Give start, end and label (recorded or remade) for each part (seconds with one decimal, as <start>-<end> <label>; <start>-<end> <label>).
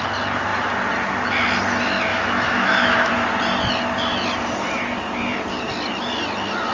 0.0-2.1 recorded; 2.1-3.1 remade; 3.1-6.7 recorded